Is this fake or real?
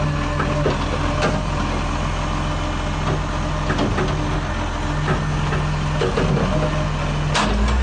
real